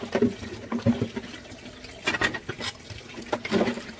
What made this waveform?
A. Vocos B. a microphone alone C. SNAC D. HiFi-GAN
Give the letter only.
B